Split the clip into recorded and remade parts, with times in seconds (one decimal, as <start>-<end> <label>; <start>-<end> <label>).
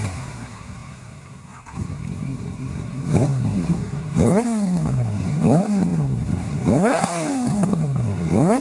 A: 0.0-8.6 remade